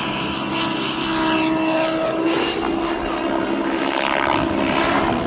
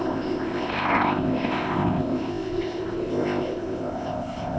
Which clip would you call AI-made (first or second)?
second